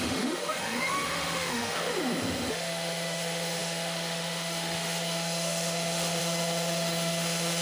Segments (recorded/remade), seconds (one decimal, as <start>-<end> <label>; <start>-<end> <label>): 0.0-1.9 remade; 1.9-2.5 recorded; 2.5-7.6 remade